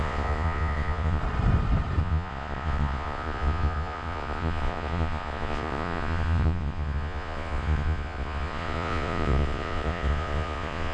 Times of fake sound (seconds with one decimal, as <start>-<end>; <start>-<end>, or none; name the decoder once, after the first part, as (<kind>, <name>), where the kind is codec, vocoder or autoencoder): 0.0-1.2 (vocoder, Vocos); 2.0-10.9